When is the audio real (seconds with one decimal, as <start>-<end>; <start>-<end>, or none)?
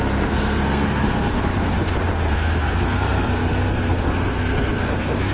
1.5-2.3